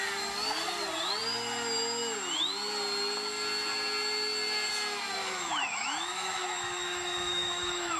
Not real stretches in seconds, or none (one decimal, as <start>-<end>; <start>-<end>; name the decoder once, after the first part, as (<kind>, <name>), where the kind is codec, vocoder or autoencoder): 5.2-8.0 (autoencoder, DAC-VAE)